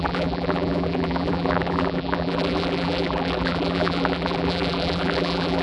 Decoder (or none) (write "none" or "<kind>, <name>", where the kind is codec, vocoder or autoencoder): vocoder, BigVGAN v2